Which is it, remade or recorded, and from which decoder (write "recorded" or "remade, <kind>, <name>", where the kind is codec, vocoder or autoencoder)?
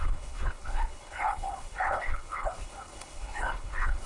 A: remade, codec, HILCodec